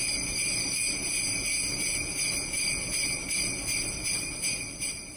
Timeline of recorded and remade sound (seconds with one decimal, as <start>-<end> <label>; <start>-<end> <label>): 0.0-1.0 remade; 1.0-1.7 recorded; 1.7-5.2 remade